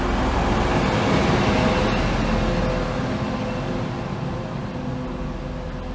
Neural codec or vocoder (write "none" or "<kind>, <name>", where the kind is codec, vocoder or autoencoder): none